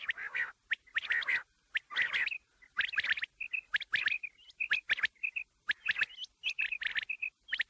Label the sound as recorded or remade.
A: recorded